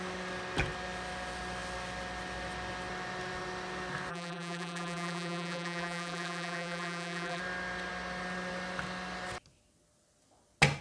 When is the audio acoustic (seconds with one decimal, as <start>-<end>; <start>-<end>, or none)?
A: 0.0-4.1; 7.4-10.8